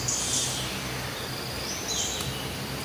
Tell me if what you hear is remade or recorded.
recorded